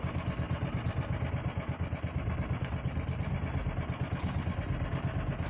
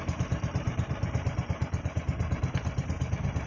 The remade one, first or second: second